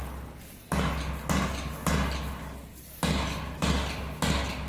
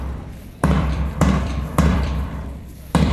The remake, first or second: second